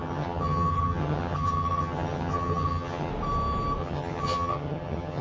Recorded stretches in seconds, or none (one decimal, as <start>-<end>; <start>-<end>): 3.1-3.8